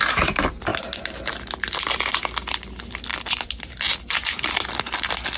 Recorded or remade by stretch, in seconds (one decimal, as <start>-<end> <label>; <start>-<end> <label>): 0.0-5.4 recorded